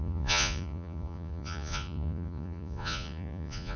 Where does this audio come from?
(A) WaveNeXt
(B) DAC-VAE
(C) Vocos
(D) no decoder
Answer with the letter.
C